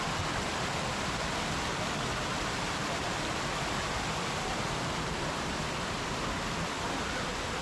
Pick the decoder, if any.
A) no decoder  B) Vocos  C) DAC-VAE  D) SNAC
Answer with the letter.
A